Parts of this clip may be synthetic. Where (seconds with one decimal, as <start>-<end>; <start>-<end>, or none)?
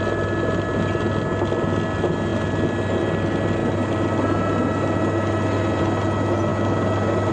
none